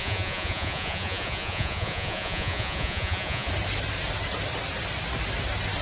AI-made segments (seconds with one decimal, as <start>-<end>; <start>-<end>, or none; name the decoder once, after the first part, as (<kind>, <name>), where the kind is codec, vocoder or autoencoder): 0.0-3.5 (vocoder, Vocos)